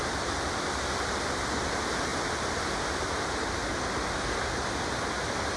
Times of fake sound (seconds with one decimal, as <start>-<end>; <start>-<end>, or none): none